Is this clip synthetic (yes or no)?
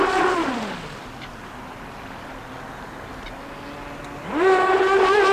no